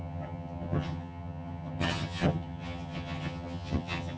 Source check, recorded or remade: remade